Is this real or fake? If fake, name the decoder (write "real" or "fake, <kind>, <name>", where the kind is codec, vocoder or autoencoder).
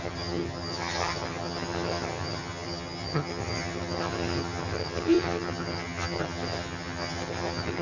fake, vocoder, HiFi-GAN